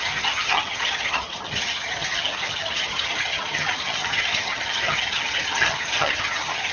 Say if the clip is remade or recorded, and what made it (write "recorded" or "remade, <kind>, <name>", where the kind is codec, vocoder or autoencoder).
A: remade, vocoder, HiFi-GAN